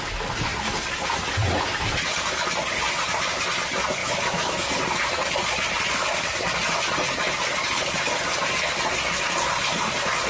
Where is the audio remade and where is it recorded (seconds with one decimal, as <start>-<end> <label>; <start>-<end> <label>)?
0.0-4.0 recorded; 4.0-4.7 remade; 4.7-10.3 recorded